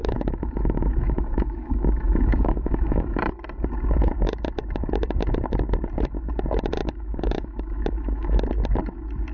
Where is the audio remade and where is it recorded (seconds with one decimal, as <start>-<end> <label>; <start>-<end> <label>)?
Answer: 0.0-3.3 remade; 3.3-6.8 recorded; 6.8-8.4 remade; 8.4-9.3 recorded